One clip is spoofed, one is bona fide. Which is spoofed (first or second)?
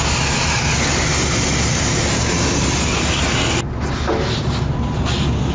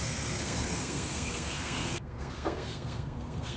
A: second